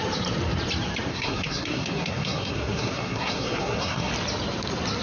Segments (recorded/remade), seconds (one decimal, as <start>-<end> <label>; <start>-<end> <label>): 0.0-1.1 recorded; 1.1-4.1 remade; 4.1-5.0 recorded